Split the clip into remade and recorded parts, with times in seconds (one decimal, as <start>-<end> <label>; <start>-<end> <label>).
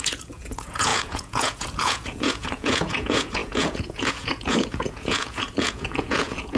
0.0-6.6 remade